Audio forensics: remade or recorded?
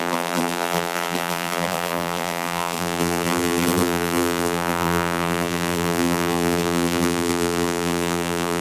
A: remade